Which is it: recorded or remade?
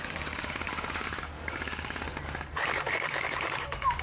remade